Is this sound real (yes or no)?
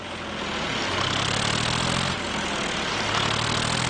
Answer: yes